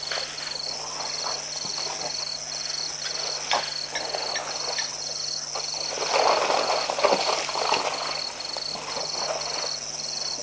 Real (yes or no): yes